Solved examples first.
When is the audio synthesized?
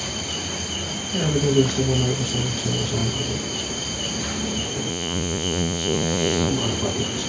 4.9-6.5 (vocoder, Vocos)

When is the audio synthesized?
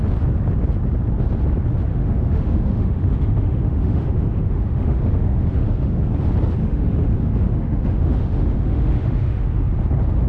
1.9-6.0 (autoencoder, DAC-VAE); 6.6-9.6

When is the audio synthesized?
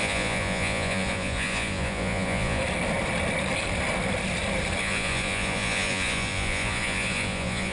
0.0-2.6 (vocoder, Vocos); 4.8-7.7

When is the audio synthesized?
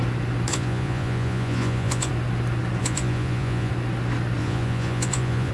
0.5-2.1 (vocoder, Vocos); 2.8-3.7; 4.4-5.5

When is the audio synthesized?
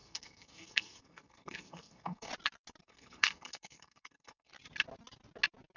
0.0-2.3 (codec, SNAC); 2.8-4.5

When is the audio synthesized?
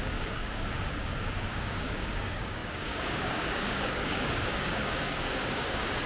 0.0-6.1 (codec, DAC)